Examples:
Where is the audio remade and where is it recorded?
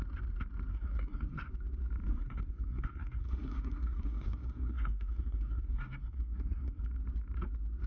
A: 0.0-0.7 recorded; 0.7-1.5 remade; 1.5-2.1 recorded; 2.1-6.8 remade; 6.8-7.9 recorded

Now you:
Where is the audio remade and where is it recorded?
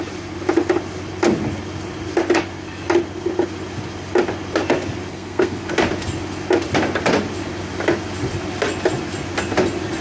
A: 0.0-5.1 recorded; 5.1-5.7 remade; 5.7-10.0 recorded